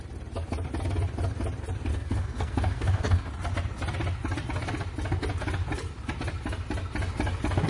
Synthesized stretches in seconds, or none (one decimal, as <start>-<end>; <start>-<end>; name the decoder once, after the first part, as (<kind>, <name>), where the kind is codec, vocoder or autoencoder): 1.9-3.3 (codec, SNAC)